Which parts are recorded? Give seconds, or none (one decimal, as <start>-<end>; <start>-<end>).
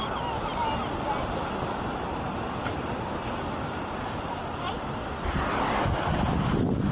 0.0-6.9